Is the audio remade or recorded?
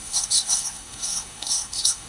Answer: remade